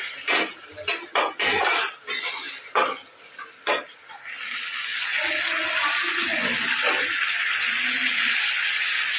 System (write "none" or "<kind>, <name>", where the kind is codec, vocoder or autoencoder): none